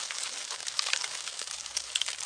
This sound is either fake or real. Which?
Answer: fake